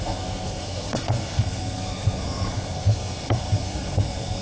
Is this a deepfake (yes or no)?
yes